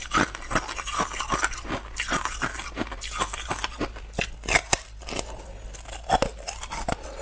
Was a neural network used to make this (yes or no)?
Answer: no